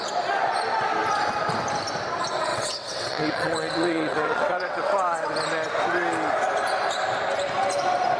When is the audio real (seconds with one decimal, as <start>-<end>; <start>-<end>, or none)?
0.0-2.5; 5.3-8.2

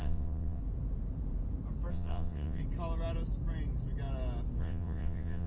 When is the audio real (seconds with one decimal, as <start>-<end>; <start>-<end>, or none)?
0.6-1.9; 2.6-4.6

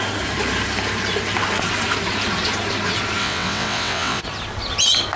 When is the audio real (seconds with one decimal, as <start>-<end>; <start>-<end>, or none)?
0.0-3.2; 4.2-5.2

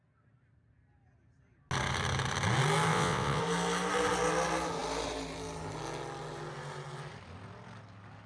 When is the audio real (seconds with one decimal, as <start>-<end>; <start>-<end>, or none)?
0.0-2.9; 3.4-8.3

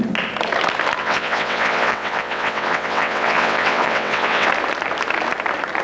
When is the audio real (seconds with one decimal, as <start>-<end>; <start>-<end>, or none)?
0.0-1.0; 4.5-5.8

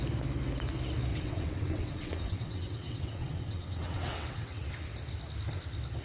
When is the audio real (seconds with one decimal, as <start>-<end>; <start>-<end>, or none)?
0.0-1.1; 4.7-6.0